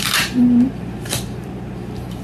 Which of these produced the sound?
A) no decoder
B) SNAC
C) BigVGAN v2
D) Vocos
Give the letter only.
C